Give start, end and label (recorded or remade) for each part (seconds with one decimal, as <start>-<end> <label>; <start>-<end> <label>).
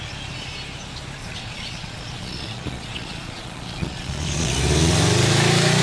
0.0-1.2 recorded; 1.2-4.5 remade; 4.5-5.8 recorded